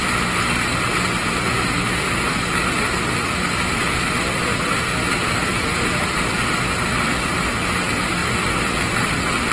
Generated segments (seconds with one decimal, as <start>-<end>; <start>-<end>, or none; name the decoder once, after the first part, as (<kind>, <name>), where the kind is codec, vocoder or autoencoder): 4.5-7.3 (vocoder, BigVGAN v2)